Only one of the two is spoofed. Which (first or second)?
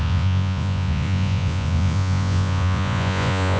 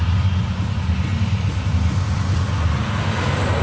first